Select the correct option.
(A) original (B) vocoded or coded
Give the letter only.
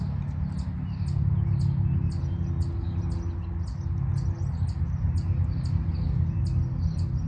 A